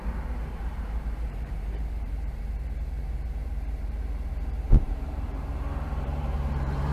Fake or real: fake